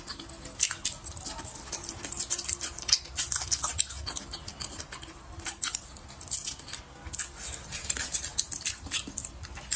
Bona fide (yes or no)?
yes